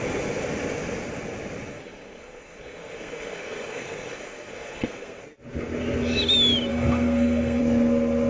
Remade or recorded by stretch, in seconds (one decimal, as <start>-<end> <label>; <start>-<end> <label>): 0.0-1.7 recorded; 1.7-5.2 remade; 5.2-6.7 recorded; 6.7-7.6 remade; 7.6-8.3 recorded